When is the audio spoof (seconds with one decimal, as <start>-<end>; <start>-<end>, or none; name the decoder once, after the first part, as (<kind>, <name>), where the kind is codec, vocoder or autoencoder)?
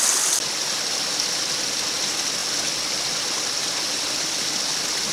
none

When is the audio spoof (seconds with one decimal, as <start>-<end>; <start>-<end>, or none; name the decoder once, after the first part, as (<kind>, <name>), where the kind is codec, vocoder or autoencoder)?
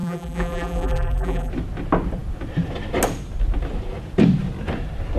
0.0-1.5 (vocoder, BigVGAN v2)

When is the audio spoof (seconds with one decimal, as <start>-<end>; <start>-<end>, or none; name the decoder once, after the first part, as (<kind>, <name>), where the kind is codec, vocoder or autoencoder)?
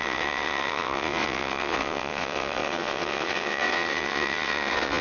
0.0-5.0 (vocoder, WaveNeXt)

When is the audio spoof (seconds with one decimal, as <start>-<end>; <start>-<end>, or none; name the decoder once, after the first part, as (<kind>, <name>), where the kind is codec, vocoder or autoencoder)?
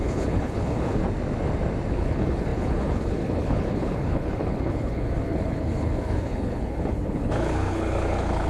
0.0-1.0 (codec, HILCodec); 1.9-8.5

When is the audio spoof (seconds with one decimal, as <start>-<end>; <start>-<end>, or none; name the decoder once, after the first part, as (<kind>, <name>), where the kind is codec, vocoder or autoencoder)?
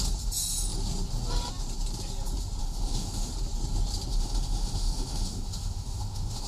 2.6-3.3 (autoencoder, DAC-VAE); 4.1-6.5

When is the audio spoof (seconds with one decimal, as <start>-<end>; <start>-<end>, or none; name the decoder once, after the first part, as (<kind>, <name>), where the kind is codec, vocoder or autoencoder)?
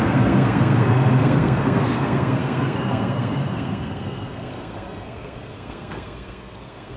0.0-7.0 (codec, SNAC)